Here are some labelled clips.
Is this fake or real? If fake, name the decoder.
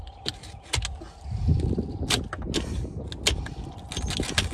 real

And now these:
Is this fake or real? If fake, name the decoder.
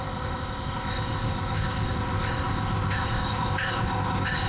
fake, codec, ZipCodec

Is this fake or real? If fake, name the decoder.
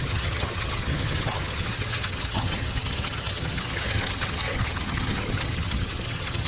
fake, vocoder, HiFi-GAN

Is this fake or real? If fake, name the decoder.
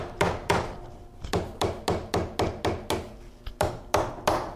real